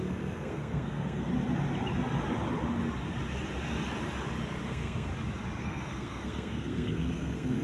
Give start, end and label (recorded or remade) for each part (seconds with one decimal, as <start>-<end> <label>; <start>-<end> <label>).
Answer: 0.0-1.3 remade; 1.3-4.6 recorded; 4.6-5.1 remade; 5.1-5.6 recorded; 5.6-7.6 remade